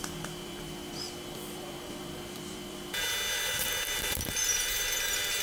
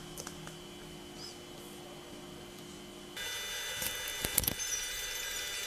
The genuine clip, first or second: second